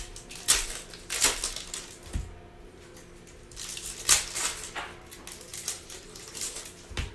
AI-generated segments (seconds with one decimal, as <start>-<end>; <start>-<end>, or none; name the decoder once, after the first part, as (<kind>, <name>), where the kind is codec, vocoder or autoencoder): 5.5-7.1 (vocoder, BigVGAN v2)